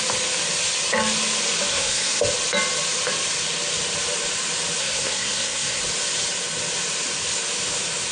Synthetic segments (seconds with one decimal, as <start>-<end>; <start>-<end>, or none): 1.7-2.2; 4.8-5.8